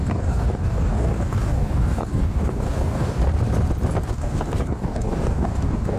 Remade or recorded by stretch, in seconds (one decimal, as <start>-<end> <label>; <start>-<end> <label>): 0.0-3.2 remade; 3.2-4.1 recorded; 4.1-6.0 remade